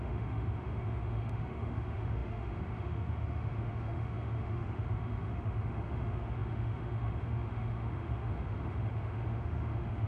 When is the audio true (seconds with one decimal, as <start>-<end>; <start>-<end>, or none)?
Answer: none